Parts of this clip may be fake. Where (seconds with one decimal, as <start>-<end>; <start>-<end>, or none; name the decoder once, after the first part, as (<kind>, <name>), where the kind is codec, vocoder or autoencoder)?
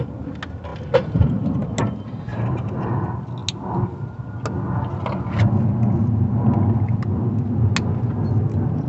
2.3-2.8 (vocoder, BigVGAN v2)